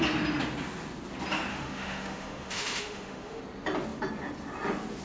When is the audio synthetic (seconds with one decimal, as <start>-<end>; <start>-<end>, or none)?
1.5-3.4